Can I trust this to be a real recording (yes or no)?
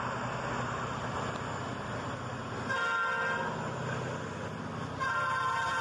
yes